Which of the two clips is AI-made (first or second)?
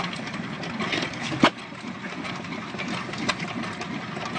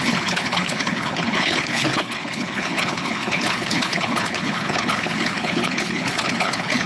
second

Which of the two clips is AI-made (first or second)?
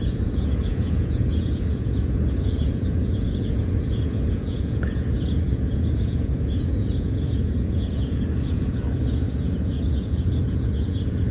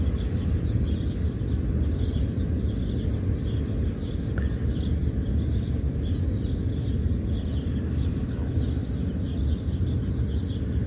first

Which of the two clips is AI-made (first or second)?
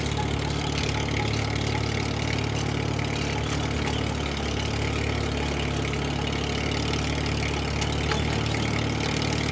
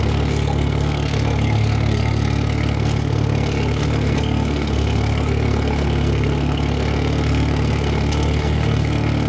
second